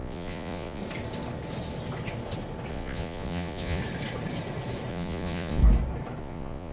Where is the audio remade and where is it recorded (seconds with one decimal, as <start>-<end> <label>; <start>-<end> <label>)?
0.0-0.8 remade; 0.8-2.7 recorded; 2.7-3.8 remade; 3.8-4.9 recorded; 4.9-5.6 remade; 5.6-6.2 recorded; 6.2-6.7 remade